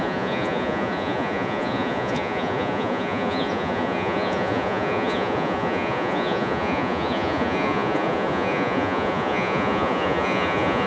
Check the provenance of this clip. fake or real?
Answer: fake